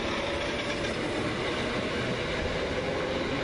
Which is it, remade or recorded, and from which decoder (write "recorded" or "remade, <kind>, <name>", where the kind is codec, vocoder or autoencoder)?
recorded